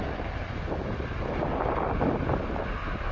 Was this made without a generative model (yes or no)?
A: yes